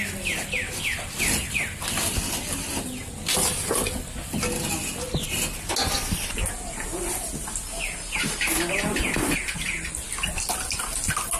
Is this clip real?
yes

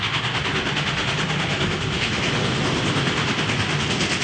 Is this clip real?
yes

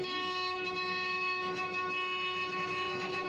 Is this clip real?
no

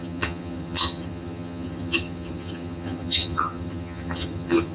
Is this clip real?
no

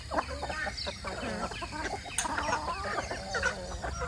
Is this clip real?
yes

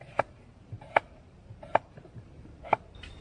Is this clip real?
no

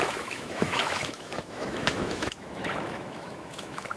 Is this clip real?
no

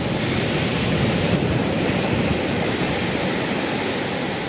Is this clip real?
yes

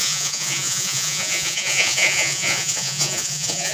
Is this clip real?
no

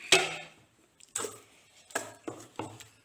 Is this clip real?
yes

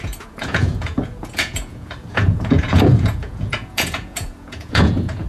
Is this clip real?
no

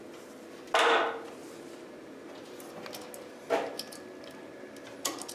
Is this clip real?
yes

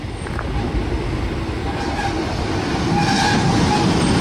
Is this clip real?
yes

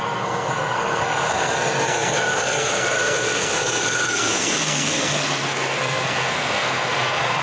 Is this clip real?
no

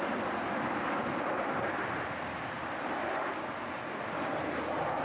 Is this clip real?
yes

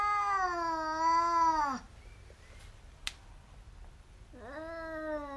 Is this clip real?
yes